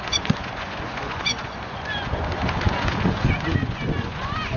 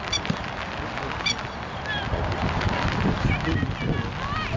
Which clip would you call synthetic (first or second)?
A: first